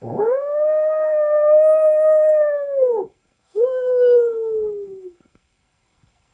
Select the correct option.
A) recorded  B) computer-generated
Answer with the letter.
B